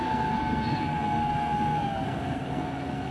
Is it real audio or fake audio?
fake